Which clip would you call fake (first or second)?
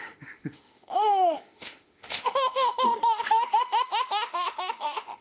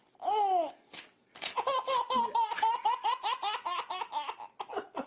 first